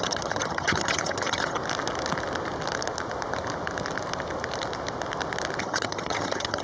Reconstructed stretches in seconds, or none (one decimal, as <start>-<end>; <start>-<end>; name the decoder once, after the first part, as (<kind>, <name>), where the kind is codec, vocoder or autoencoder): 0.0-1.6 (vocoder, HiFi-GAN); 5.6-6.6